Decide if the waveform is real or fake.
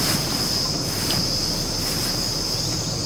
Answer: real